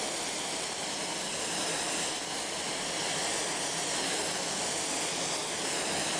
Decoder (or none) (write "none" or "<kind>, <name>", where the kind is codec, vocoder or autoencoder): none